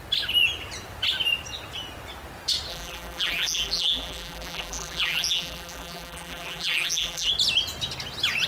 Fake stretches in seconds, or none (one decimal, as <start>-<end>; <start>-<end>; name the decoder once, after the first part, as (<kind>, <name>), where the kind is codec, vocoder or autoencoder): 2.7-7.3 (vocoder, BigVGAN v2)